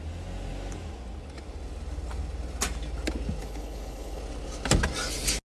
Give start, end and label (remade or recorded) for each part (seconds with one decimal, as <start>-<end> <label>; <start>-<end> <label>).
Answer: 0.0-3.4 recorded; 3.4-4.2 remade; 4.2-5.6 recorded